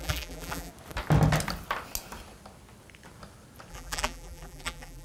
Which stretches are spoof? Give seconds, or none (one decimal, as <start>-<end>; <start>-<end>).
0.0-0.7; 3.7-5.0